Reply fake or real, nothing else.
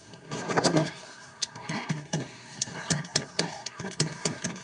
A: fake